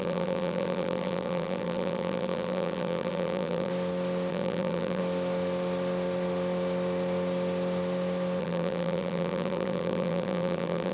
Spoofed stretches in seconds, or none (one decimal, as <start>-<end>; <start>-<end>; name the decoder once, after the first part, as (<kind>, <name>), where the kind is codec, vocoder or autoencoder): 0.0-3.7 (vocoder, BigVGAN v2); 4.3-5.0; 8.4-10.9

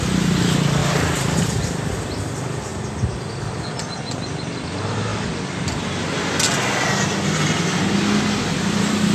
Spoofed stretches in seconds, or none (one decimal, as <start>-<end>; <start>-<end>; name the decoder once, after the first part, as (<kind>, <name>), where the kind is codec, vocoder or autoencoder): 0.8-1.4 (vocoder, BigVGAN v2)

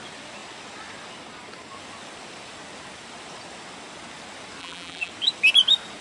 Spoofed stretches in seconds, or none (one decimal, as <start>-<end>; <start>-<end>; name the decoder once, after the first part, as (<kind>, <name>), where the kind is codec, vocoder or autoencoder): 4.6-5.1 (vocoder, BigVGAN v2)

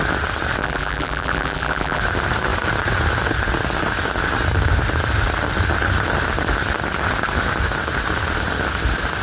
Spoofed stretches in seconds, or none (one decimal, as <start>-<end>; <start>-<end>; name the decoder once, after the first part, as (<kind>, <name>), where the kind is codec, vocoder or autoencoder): 0.6-2.0 (vocoder, BigVGAN v2)